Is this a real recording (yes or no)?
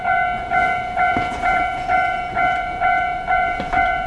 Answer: no